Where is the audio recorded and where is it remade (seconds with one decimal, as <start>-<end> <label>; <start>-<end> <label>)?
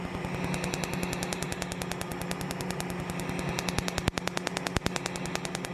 0.0-5.7 recorded